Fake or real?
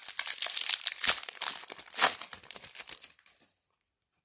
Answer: fake